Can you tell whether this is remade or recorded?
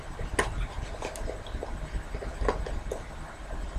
recorded